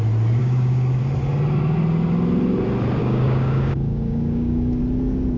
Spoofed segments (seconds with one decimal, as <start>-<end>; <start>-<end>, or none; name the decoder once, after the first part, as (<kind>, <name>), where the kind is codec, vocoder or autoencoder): 0.4-1.0 (codec, DAC); 3.0-4.8